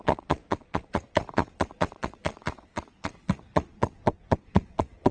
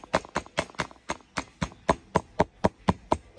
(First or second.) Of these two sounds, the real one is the second